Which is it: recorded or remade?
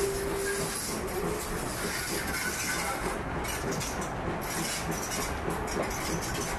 recorded